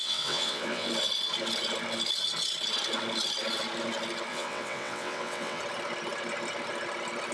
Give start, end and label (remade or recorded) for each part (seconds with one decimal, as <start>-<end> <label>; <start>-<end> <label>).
0.0-0.9 remade; 0.9-4.3 recorded; 4.3-5.6 remade; 5.6-7.3 recorded